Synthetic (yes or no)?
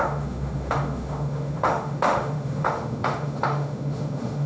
yes